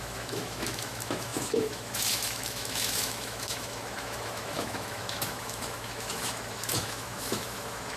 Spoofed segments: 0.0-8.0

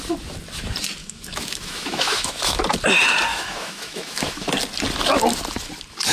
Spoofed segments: 1.0-2.6; 3.3-4.5

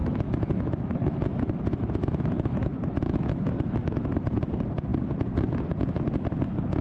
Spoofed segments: 0.0-4.1

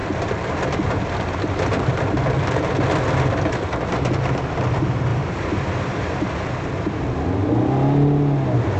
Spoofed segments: 0.0-3.2; 5.1-7.5

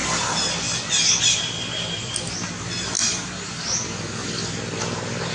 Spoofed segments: none

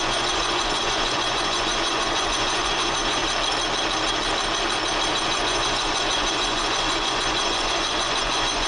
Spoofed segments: 0.0-3.2; 5.1-8.7

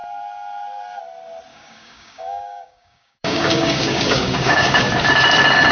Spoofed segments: 1.5-4.9